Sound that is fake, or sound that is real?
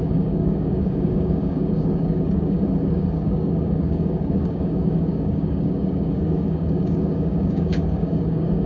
fake